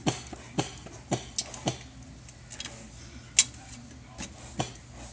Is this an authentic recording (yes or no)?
yes